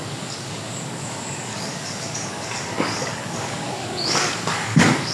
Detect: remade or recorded remade